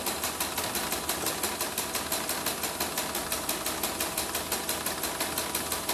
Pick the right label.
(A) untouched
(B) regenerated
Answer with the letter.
A